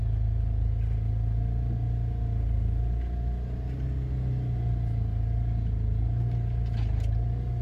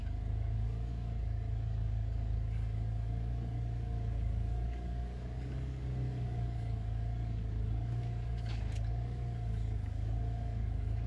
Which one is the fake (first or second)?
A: second